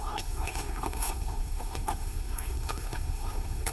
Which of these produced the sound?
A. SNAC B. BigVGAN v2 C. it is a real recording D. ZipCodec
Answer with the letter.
A